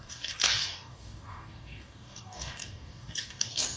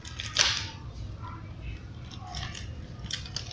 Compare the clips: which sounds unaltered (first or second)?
second